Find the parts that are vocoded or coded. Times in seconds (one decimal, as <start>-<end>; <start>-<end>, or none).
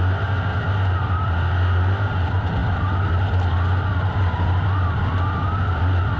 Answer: none